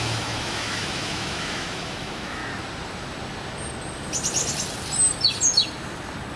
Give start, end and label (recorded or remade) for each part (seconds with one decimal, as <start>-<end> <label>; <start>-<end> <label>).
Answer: 0.0-2.4 remade; 2.4-6.4 recorded

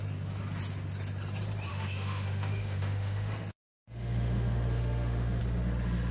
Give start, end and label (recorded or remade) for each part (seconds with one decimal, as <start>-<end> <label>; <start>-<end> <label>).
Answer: 0.0-1.7 recorded; 1.7-5.4 remade; 5.4-6.1 recorded

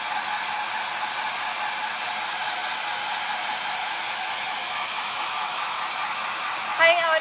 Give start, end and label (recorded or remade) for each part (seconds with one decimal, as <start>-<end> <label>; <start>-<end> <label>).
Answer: 0.0-4.6 recorded; 4.6-5.8 remade; 5.8-7.2 recorded

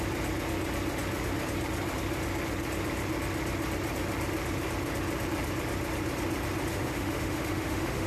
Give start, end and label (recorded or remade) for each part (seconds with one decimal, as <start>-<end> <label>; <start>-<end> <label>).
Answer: 0.0-6.7 recorded; 6.7-8.1 remade

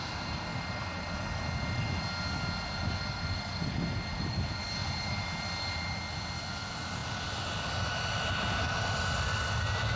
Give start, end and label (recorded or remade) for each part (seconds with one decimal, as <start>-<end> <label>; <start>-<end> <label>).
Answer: 0.0-10.0 recorded

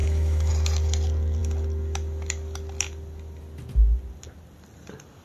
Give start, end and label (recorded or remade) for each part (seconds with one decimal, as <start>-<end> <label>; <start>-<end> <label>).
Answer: 0.0-0.5 remade; 0.5-5.2 recorded

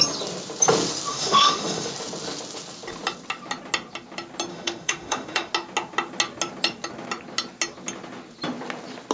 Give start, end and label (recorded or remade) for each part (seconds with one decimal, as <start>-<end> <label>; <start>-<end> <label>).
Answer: 0.0-1.1 recorded; 1.1-1.9 remade; 1.9-4.5 recorded; 4.5-5.5 remade; 5.5-9.1 recorded